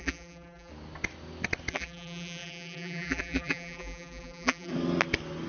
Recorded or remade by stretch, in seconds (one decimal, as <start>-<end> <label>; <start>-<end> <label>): 0.0-0.7 remade; 0.7-1.7 recorded; 1.7-4.7 remade; 4.7-5.5 recorded